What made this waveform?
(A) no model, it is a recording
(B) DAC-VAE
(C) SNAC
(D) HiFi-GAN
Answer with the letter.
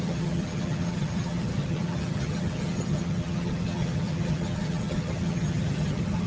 D